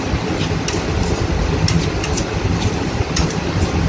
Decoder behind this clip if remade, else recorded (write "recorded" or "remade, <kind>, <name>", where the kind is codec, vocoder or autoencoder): recorded